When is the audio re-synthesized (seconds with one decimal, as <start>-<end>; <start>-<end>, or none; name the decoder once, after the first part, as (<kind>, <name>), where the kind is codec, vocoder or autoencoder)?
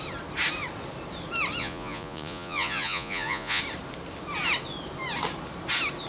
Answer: 1.6-3.6 (vocoder, Vocos)